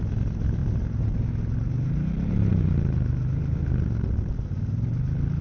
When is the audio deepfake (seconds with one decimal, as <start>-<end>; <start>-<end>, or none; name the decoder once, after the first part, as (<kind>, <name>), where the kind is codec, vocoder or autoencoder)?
none